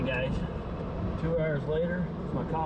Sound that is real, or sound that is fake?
real